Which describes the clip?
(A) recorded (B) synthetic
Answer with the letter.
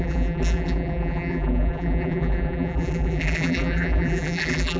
B